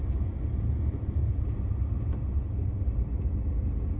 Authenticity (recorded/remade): recorded